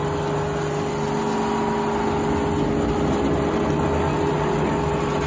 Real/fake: real